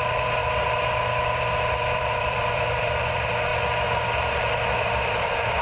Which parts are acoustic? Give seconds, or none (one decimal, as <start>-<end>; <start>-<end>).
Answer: 0.0-0.4; 3.1-5.6